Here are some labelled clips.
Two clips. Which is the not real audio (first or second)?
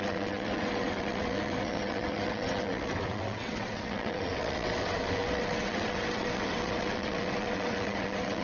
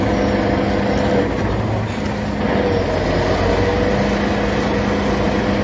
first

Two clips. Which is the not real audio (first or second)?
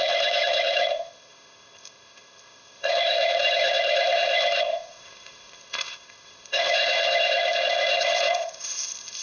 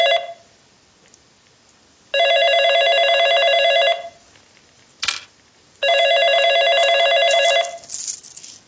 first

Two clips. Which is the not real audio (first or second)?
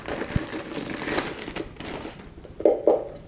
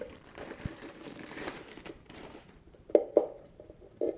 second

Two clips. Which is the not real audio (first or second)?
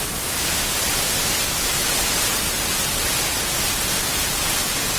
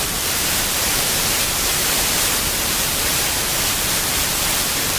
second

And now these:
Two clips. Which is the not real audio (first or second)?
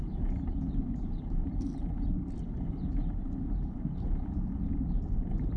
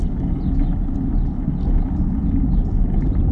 first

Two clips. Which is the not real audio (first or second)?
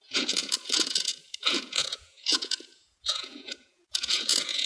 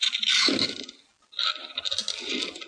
first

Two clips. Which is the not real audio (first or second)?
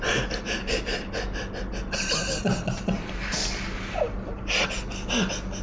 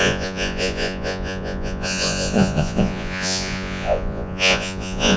second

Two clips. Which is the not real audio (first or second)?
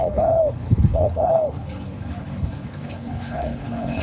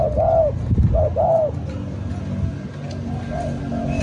first